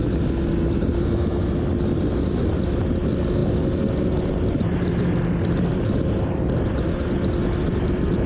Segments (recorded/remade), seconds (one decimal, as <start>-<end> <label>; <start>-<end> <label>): 0.0-8.3 recorded